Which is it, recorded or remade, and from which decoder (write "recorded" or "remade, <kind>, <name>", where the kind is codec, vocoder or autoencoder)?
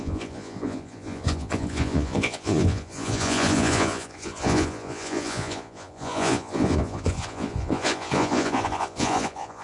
remade, vocoder, Vocos